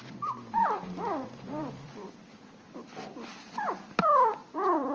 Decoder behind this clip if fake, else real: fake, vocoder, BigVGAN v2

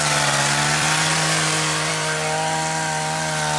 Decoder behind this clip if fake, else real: fake, vocoder, BigVGAN v2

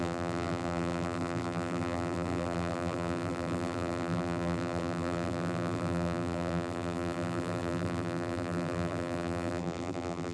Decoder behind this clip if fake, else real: fake, vocoder, BigVGAN v2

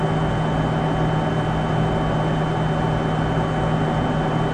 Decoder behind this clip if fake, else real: real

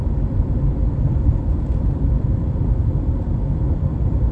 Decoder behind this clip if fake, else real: fake, vocoder, BigVGAN v2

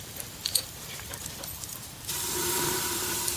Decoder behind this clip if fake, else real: fake, vocoder, BigVGAN v2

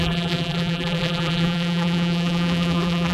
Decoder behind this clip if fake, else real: fake, vocoder, BigVGAN v2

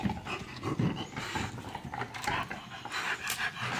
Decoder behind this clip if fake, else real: real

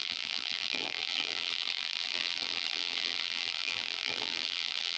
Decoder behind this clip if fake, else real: fake, vocoder, BigVGAN v2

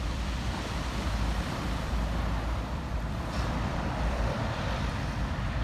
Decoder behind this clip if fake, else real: fake, vocoder, BigVGAN v2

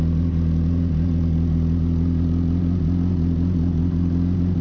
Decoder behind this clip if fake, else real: real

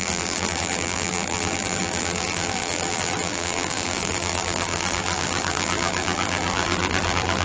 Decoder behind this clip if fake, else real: fake, vocoder, BigVGAN v2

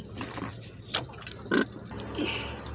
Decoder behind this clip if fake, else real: real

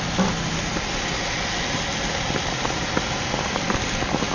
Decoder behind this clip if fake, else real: real